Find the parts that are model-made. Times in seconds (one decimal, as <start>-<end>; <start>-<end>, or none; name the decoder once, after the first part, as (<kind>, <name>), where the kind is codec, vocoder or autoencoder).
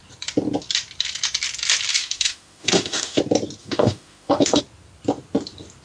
1.9-3.2 (autoencoder, DAC-VAE); 3.6-4.6